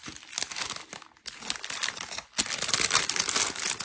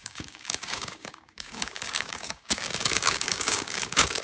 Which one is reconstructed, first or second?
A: second